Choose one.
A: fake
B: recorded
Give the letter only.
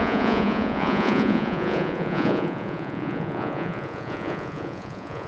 A